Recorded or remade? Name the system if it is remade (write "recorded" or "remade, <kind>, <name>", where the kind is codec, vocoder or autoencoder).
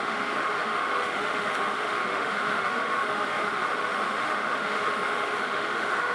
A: remade, autoencoder, DAC-VAE